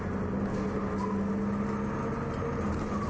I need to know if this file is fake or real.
real